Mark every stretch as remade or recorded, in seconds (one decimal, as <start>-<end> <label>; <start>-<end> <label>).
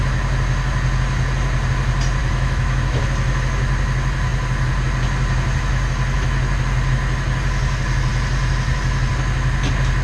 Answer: 0.0-2.2 recorded; 2.2-3.0 remade; 3.0-10.0 recorded